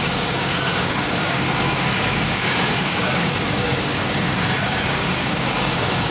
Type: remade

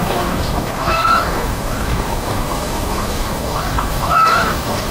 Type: remade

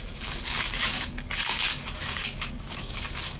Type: remade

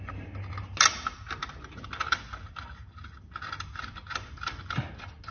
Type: recorded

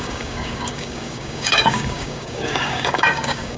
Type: remade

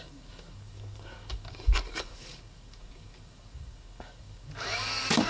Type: remade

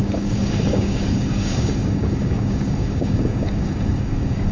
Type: remade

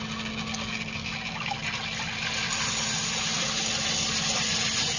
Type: recorded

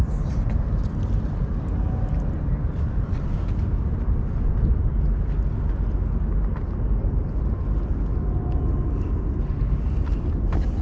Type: recorded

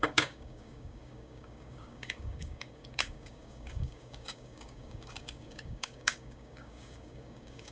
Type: remade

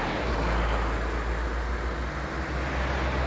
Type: recorded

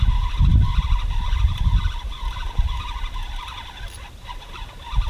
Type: recorded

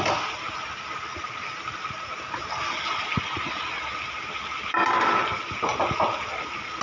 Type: recorded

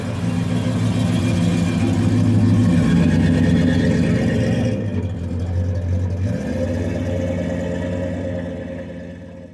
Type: recorded